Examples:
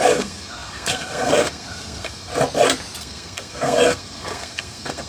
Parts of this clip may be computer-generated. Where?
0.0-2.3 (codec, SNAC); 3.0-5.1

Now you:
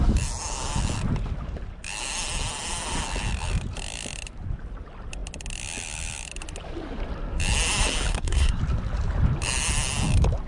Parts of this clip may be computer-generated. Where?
8.1-8.6 (codec, SNAC)